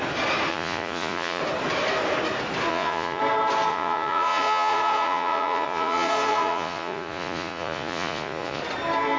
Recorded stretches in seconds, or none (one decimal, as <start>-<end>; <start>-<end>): 0.0-0.5; 1.4-2.7; 3.2-3.7; 8.6-9.2

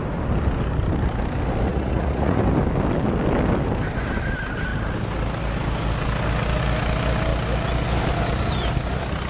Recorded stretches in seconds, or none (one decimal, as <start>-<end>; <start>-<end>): 0.0-1.7; 2.4-9.3

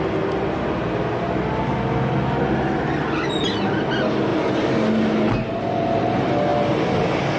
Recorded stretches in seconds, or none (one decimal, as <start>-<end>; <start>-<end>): 0.0-7.4

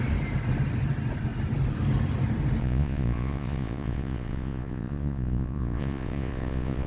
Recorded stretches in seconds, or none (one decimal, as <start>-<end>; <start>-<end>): 0.0-2.6

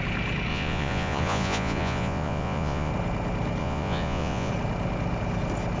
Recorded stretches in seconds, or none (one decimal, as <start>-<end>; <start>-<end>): 0.0-0.5; 2.9-3.6; 4.5-5.8

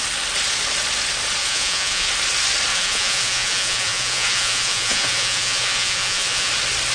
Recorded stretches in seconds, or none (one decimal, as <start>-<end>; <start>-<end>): 0.0-1.4; 2.1-2.7; 6.5-6.9